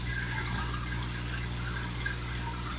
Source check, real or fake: real